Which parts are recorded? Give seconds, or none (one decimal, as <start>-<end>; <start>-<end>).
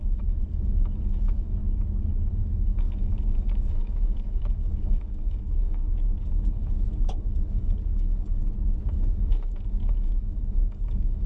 1.6-2.3; 8.4-8.9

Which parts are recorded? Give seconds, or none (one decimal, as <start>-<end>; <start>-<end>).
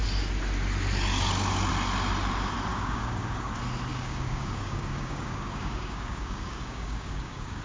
0.0-2.7; 3.4-3.9